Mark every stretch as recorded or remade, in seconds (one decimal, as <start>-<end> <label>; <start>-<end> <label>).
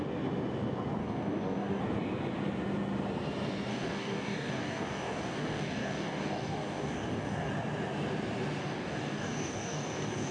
0.0-1.0 recorded; 1.0-1.8 remade; 1.8-3.7 recorded; 3.7-7.5 remade; 7.5-8.6 recorded; 8.6-10.3 remade